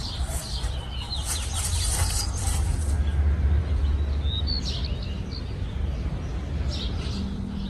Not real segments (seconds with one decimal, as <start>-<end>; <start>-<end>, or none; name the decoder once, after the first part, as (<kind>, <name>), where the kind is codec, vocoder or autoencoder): 0.0-0.9 (vocoder, BigVGAN v2); 1.9-2.6